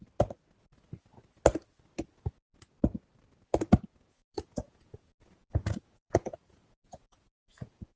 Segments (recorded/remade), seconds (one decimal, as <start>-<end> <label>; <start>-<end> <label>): 0.0-3.9 recorded; 3.9-8.0 remade